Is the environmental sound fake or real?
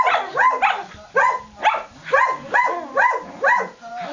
real